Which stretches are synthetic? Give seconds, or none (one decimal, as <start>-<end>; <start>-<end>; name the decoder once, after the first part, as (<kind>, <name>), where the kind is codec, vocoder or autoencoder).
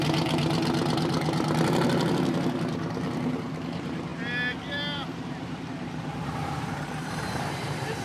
0.0-4.1 (vocoder, BigVGAN v2); 5.1-8.0